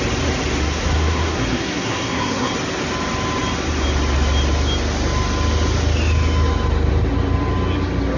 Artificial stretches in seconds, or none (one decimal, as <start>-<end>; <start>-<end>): 0.6-2.5

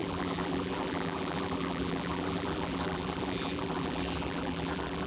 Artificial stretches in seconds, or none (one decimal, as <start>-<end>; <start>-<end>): 0.0-5.1

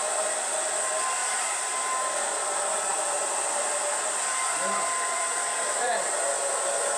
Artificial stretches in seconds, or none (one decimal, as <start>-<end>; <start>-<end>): none

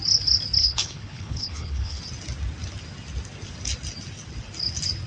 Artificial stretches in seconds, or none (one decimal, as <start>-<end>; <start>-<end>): 0.6-2.0

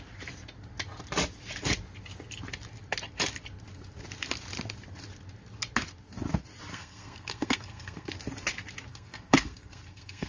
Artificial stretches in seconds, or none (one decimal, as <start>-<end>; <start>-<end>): 6.7-8.1; 8.9-10.3

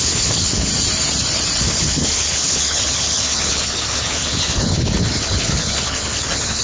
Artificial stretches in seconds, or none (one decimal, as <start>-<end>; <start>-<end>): 0.0-0.7; 1.6-6.6

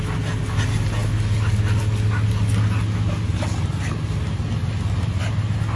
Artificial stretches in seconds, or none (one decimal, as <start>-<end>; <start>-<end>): none

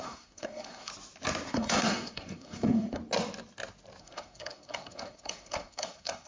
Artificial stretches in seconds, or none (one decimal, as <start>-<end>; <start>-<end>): 0.0-0.9; 1.5-3.0; 4.0-6.3